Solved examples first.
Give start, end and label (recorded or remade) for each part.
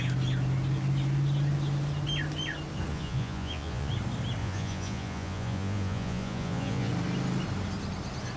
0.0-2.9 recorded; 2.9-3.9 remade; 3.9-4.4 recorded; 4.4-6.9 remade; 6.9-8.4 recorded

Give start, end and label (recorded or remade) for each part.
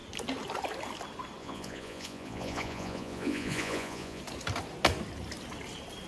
0.0-1.4 recorded; 1.4-4.2 remade; 4.2-6.1 recorded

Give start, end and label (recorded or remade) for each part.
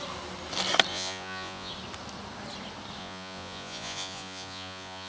0.0-0.9 recorded; 0.9-1.7 remade; 1.7-3.0 recorded; 3.0-5.1 remade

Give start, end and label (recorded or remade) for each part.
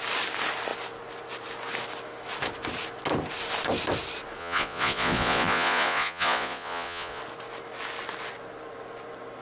0.0-4.4 recorded; 4.4-7.2 remade; 7.2-9.4 recorded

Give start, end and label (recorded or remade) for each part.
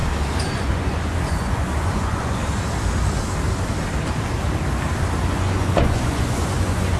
0.0-0.5 recorded; 0.5-2.4 remade; 2.4-5.3 recorded; 5.3-7.0 remade